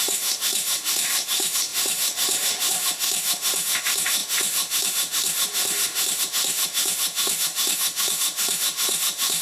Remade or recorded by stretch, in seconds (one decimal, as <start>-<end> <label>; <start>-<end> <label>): 0.0-9.4 remade